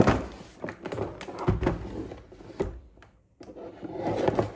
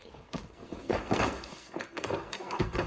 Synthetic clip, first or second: second